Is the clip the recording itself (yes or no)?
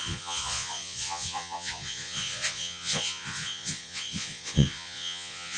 no